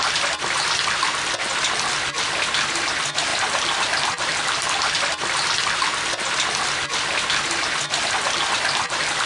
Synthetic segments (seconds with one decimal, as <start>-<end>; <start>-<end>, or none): none